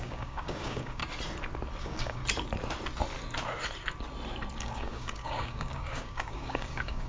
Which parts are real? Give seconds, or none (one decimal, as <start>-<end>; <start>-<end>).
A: 1.0-1.8; 2.2-4.6